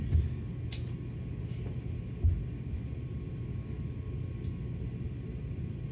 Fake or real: real